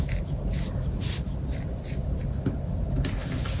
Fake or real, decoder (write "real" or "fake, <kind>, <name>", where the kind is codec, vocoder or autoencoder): real